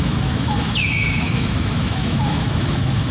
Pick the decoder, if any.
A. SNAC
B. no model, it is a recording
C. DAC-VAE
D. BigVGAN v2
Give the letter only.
C